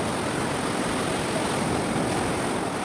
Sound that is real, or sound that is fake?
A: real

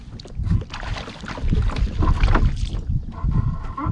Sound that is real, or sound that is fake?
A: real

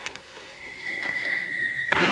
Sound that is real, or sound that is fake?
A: fake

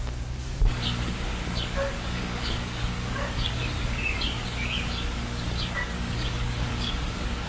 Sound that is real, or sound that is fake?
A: fake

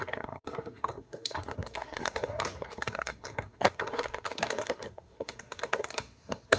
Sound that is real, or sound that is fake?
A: fake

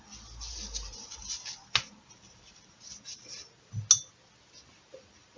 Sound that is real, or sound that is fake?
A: real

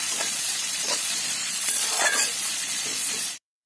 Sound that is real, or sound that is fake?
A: fake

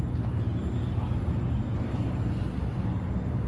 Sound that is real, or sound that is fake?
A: real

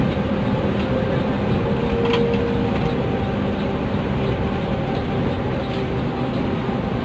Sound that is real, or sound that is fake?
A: real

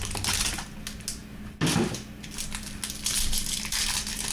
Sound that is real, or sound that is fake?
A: real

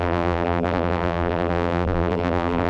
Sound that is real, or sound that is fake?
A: fake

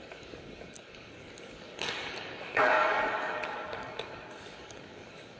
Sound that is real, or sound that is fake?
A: fake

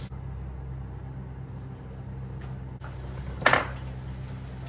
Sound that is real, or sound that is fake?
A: real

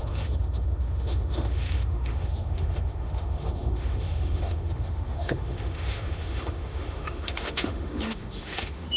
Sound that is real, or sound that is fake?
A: fake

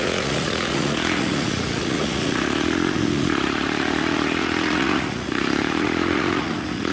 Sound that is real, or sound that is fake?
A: fake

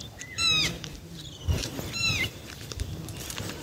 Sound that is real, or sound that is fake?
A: fake